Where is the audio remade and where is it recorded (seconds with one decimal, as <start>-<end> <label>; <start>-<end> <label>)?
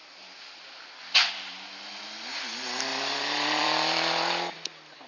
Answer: 0.0-2.9 recorded; 2.9-5.1 remade